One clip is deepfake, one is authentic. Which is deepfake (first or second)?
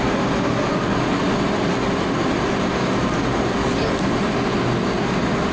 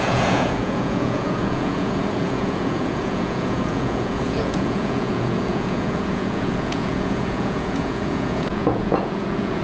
second